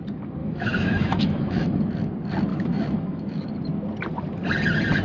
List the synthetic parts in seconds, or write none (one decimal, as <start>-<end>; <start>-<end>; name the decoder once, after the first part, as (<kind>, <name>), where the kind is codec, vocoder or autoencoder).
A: 0.4-1.8 (autoencoder, DAC-VAE); 2.5-3.5